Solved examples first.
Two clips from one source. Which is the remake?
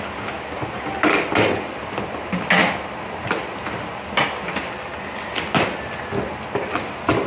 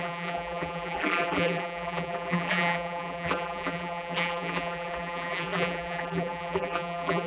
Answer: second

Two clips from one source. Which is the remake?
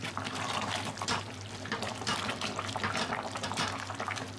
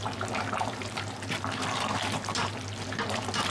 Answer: first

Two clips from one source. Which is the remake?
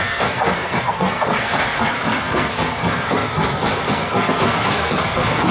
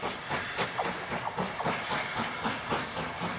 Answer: first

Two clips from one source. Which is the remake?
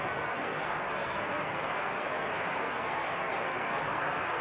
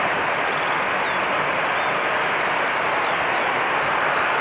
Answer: first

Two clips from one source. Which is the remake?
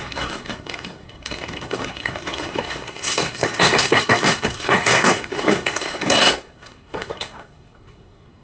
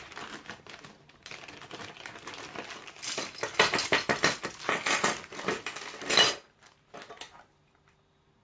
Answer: first